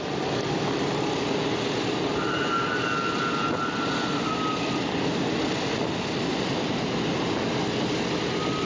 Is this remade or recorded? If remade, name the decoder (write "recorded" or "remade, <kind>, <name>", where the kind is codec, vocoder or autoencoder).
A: recorded